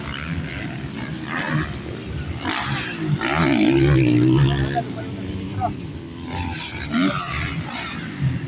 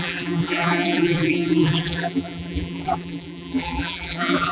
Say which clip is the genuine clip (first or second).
first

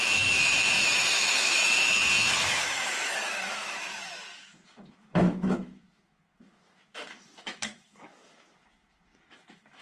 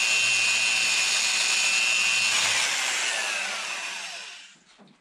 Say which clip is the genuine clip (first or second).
second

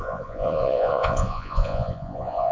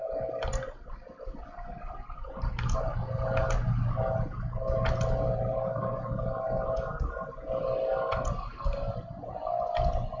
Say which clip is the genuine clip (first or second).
second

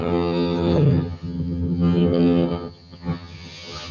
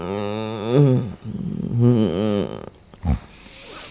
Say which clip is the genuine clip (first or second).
second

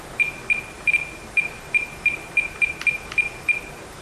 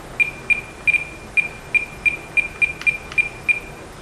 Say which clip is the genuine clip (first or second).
second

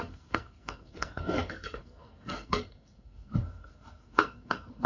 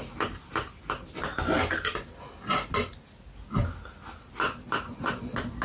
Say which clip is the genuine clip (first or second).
second